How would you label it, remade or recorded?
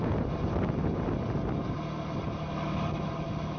recorded